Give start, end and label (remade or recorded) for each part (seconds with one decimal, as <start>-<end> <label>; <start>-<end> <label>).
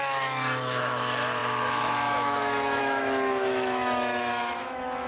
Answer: 0.0-5.1 remade